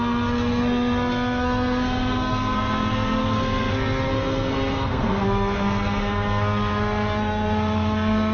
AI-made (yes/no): yes